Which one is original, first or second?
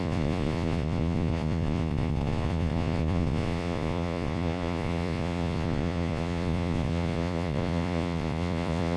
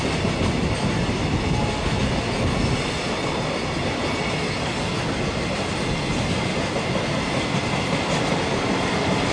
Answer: second